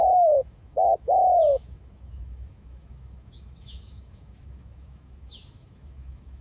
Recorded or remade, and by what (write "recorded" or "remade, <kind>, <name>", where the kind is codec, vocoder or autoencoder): remade, autoencoder, DAC-VAE